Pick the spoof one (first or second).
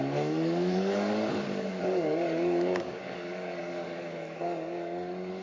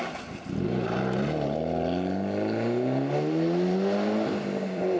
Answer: first